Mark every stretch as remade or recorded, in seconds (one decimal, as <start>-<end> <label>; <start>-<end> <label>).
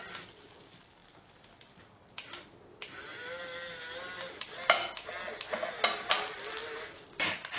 0.0-7.6 recorded